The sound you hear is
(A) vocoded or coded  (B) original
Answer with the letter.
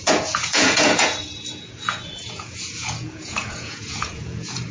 A